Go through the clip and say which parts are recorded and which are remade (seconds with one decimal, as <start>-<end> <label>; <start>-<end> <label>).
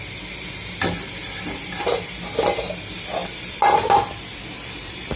0.0-3.2 recorded; 3.2-5.2 remade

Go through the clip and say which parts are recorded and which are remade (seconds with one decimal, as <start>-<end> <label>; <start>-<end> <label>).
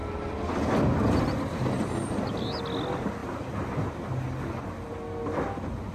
0.0-5.9 recorded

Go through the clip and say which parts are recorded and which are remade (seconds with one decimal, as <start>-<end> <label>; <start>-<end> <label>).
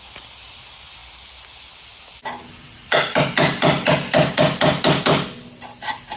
0.0-6.2 recorded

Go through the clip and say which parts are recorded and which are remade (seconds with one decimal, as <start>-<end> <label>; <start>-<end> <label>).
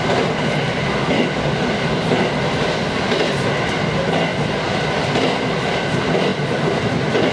0.0-4.3 recorded; 4.3-5.7 remade; 5.7-7.3 recorded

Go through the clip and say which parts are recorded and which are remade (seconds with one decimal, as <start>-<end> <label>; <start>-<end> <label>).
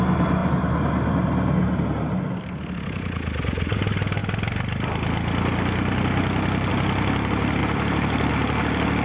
0.0-7.6 recorded; 7.6-8.3 remade; 8.3-9.0 recorded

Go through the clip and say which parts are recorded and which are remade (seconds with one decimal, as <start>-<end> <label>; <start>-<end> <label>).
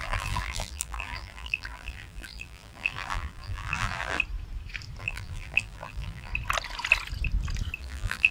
0.0-4.2 remade; 4.2-5.0 recorded; 5.0-6.3 remade; 6.3-7.8 recorded; 7.8-8.3 remade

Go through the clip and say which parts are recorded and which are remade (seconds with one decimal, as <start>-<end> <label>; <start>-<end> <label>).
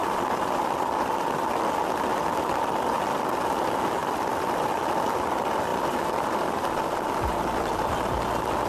0.0-1.0 remade; 1.0-4.0 recorded; 4.0-4.9 remade; 4.9-5.7 recorded; 5.7-7.9 remade; 7.9-8.7 recorded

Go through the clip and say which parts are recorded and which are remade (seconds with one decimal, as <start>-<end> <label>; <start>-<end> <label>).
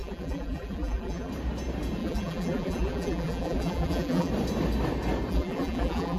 0.0-1.3 remade; 1.3-2.0 recorded; 2.0-4.3 remade; 4.3-5.3 recorded; 5.3-6.2 remade